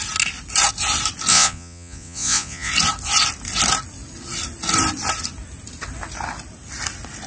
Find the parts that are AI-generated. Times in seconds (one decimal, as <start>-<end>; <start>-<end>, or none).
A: 1.3-2.7